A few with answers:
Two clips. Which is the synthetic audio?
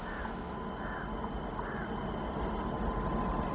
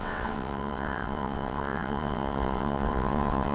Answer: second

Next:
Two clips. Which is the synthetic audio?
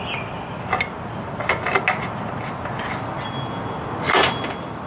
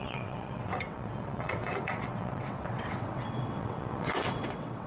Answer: second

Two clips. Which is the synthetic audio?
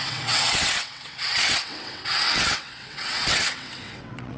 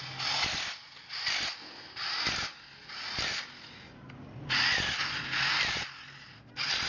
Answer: first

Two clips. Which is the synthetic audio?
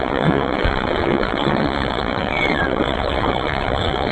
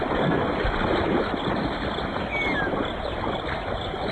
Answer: first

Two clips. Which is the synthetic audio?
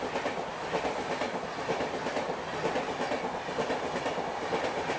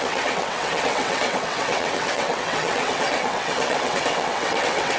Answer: second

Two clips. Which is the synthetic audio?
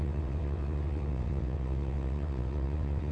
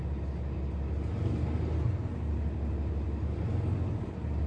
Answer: first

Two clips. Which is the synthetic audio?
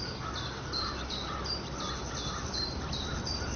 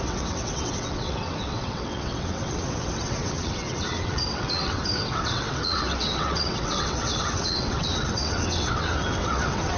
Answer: second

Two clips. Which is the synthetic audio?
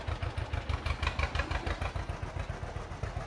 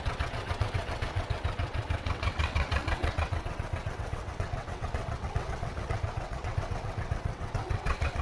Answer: second